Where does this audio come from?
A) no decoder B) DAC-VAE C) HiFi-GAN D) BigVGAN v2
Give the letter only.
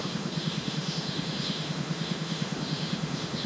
B